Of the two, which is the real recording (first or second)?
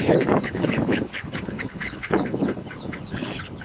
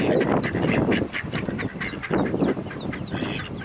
second